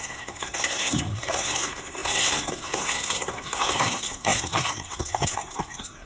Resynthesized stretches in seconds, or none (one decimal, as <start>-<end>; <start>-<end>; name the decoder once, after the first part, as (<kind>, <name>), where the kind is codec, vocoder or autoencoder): 0.0-6.1 (codec, SNAC)